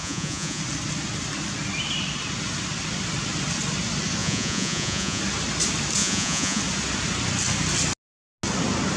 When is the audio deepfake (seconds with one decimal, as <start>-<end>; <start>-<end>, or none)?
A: 0.0-0.6; 4.2-5.2; 6.0-6.6